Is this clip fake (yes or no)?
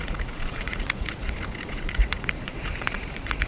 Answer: yes